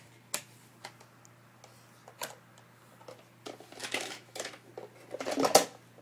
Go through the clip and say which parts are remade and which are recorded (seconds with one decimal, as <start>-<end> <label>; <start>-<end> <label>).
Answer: 0.0-3.8 recorded; 3.8-4.7 remade; 4.7-6.0 recorded